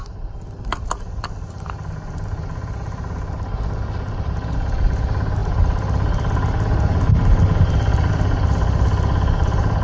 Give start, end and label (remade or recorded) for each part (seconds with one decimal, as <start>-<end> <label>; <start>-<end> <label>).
0.0-9.8 recorded